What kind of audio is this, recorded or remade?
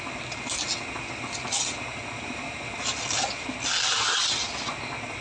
recorded